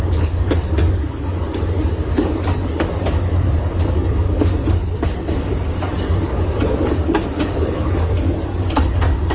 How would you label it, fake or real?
fake